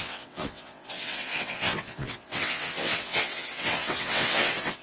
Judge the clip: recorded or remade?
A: remade